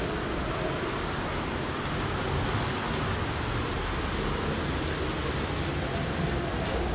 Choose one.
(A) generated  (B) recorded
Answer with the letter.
B